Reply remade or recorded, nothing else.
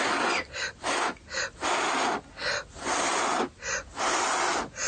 recorded